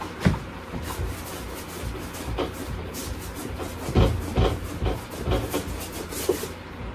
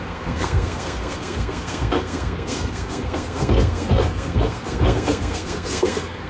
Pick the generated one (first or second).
second